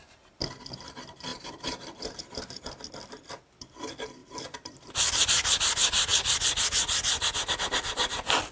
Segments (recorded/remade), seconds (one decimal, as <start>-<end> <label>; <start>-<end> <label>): 0.0-1.3 recorded; 1.3-2.6 remade; 2.6-4.2 recorded; 4.2-5.1 remade; 5.1-8.5 recorded